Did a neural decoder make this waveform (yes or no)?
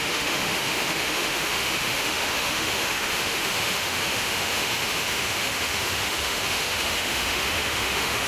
yes